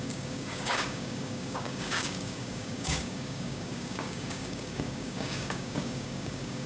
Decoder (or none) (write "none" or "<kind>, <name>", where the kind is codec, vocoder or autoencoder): codec, DAC